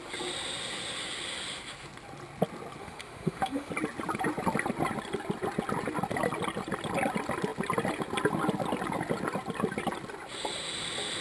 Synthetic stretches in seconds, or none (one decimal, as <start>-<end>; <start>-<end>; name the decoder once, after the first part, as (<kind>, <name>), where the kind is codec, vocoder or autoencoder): 2.8-3.7 (autoencoder, DAC-VAE)